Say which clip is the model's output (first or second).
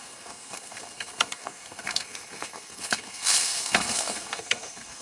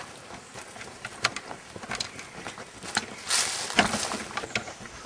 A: first